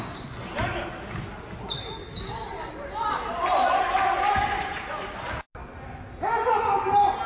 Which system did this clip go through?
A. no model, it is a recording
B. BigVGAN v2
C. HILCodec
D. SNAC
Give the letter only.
A